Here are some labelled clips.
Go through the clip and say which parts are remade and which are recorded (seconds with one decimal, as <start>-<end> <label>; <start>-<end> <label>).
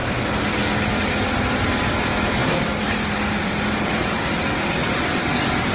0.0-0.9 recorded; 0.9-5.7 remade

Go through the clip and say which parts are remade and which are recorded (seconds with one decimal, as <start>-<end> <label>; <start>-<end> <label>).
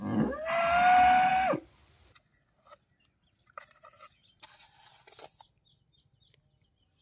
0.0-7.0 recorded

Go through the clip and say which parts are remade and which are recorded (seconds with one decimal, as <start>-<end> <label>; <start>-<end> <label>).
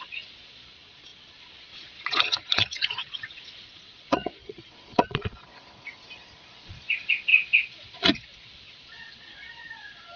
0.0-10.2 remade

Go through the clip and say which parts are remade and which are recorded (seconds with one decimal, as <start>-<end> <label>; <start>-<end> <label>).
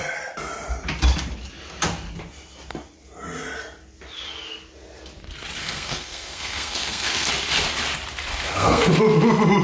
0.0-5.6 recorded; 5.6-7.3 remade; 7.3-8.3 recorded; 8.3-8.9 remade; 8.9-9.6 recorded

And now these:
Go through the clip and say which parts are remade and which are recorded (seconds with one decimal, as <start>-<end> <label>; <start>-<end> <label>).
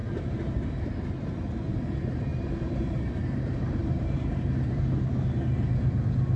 0.0-0.9 remade; 0.9-2.3 recorded; 2.3-4.9 remade; 4.9-6.4 recorded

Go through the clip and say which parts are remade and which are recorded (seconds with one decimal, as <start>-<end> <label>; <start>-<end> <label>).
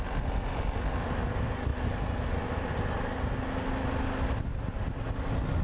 0.0-5.6 recorded